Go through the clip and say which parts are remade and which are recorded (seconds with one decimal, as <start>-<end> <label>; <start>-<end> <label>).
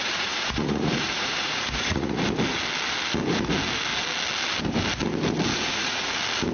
0.0-2.2 remade; 2.2-5.5 recorded; 5.5-6.1 remade; 6.1-6.5 recorded